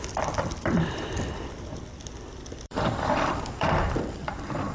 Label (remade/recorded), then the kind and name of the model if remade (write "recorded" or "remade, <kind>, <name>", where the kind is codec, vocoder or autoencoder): remade, vocoder, BigVGAN v2